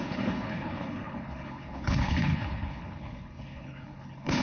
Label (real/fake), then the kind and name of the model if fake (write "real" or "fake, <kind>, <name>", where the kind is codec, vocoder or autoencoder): fake, codec, HILCodec